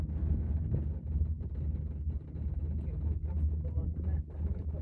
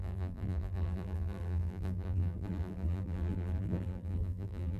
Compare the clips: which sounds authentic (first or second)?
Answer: first